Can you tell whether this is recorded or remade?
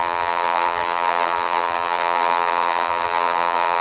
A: remade